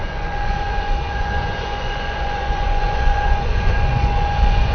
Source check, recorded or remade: remade